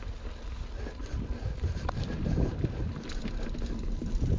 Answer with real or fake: real